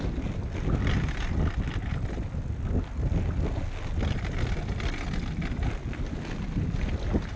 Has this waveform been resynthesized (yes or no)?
no